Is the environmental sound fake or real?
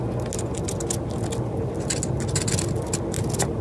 real